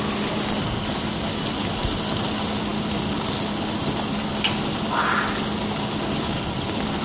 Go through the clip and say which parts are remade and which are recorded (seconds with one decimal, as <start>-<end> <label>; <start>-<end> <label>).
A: 0.0-7.0 recorded